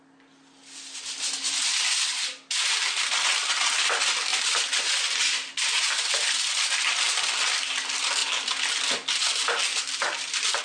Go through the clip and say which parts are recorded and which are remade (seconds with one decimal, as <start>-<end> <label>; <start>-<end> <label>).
0.0-10.6 recorded